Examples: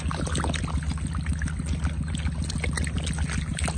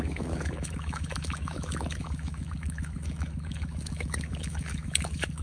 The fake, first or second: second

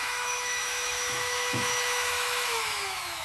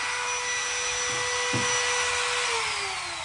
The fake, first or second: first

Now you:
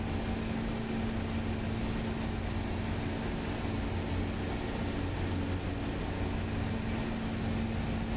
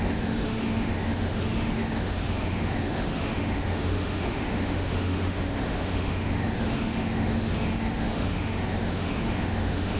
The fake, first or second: second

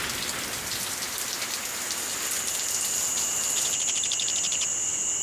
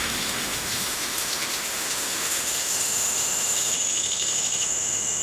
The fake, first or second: second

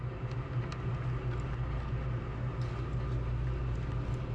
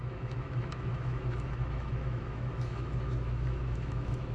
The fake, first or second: second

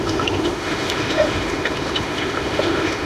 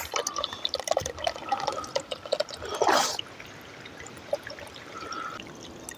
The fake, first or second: first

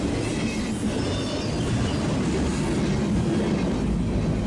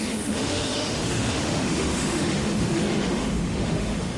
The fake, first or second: second